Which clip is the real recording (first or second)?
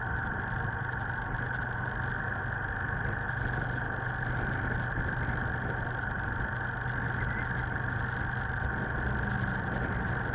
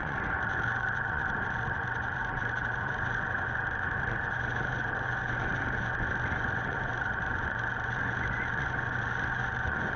first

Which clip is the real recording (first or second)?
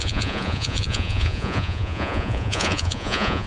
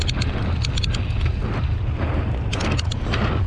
second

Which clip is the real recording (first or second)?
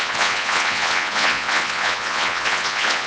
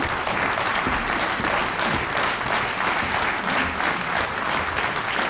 second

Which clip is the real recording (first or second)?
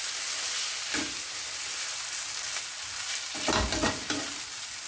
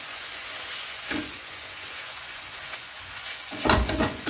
first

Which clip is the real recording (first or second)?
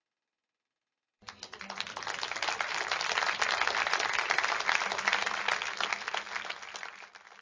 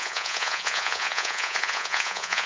first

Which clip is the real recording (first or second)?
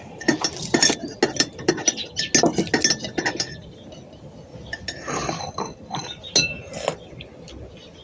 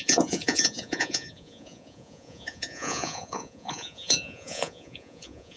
first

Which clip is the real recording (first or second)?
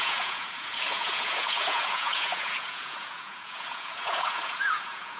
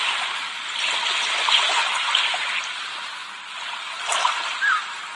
second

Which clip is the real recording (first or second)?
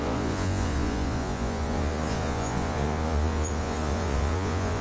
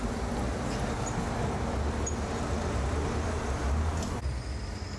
second